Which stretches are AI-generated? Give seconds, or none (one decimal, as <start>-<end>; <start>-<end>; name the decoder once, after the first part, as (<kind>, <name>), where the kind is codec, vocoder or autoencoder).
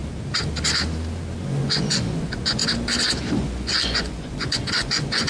1.4-2.6 (vocoder, Vocos); 3.4-5.3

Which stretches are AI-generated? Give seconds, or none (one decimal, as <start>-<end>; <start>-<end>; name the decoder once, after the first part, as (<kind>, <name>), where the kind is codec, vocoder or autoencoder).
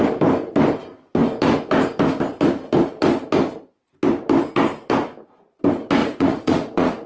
6.0-7.1 (vocoder, Vocos)